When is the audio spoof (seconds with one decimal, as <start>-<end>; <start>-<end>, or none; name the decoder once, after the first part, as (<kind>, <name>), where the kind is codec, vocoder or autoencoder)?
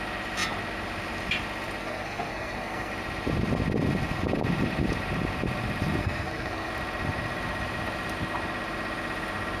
1.8-2.9 (codec, SNAC); 6.0-6.7